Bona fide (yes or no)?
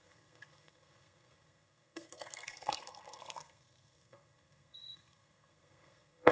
no